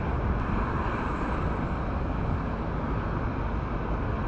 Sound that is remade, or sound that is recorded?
recorded